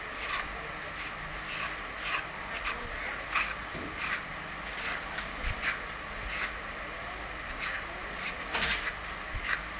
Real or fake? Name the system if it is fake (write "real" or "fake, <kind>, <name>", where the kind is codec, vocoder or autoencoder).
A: real